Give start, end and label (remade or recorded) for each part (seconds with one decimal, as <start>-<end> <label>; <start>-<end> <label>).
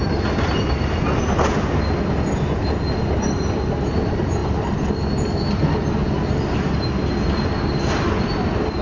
0.0-8.8 recorded